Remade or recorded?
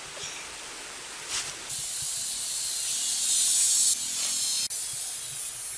recorded